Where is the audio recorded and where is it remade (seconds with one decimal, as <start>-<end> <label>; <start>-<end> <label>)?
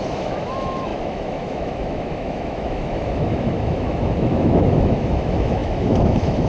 0.0-6.5 remade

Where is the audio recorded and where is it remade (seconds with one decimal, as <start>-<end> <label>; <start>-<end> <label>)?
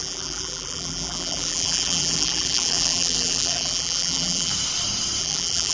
0.0-4.5 remade; 4.5-5.2 recorded; 5.2-5.7 remade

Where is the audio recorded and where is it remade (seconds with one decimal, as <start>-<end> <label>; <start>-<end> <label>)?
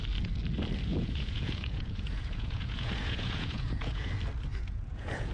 0.0-0.9 recorded; 0.9-4.1 remade; 4.1-4.5 recorded; 4.5-5.3 remade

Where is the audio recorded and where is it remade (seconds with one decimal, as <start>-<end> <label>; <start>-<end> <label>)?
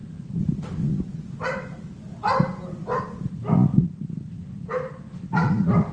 0.0-5.9 remade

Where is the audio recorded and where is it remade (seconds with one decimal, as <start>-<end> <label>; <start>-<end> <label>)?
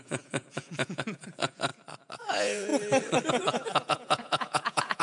0.0-1.7 remade; 1.7-2.2 recorded; 2.2-2.7 remade; 2.7-3.3 recorded; 3.3-5.0 remade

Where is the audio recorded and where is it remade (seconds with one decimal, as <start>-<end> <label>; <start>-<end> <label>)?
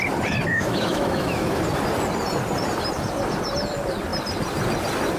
0.0-0.5 recorded; 0.5-1.6 remade; 1.6-5.2 recorded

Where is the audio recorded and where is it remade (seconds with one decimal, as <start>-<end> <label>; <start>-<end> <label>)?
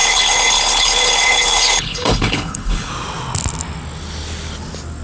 0.0-2.9 remade; 2.9-5.0 recorded